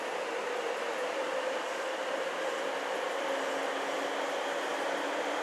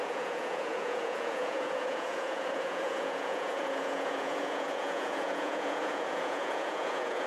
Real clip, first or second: first